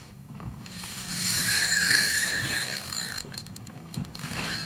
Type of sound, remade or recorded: remade